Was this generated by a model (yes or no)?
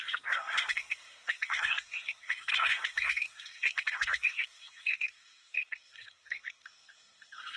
yes